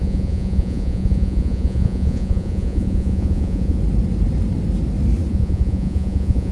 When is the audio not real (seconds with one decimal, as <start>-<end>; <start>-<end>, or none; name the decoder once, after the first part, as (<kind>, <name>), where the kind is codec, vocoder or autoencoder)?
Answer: 0.0-3.8 (vocoder, Vocos); 5.3-6.5